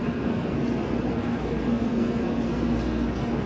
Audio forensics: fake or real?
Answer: fake